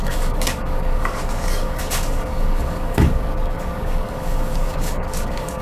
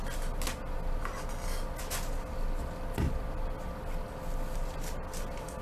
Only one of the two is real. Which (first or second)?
second